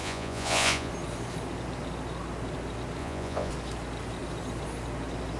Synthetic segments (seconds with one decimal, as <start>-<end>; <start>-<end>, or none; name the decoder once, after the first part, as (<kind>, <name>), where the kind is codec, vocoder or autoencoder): 0.0-0.9 (vocoder, Vocos); 3.0-3.5